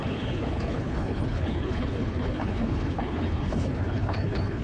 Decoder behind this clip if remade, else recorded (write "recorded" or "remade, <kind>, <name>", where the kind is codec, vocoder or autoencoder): remade, codec, HILCodec